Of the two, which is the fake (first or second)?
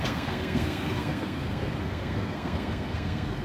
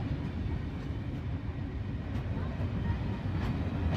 first